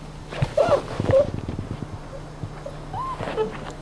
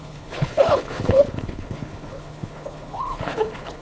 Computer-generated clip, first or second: second